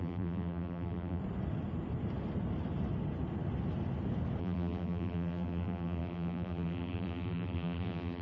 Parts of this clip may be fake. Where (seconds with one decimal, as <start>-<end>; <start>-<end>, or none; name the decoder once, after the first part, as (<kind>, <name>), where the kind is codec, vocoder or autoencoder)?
0.0-1.2 (vocoder, BigVGAN v2); 4.4-8.2